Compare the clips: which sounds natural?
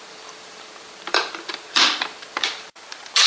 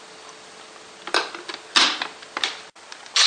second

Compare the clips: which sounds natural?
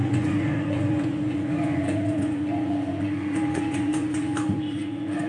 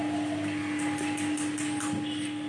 second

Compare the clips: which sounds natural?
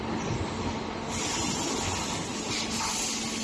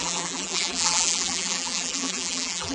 first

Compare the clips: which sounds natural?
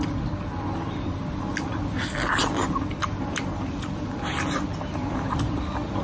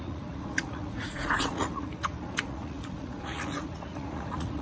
first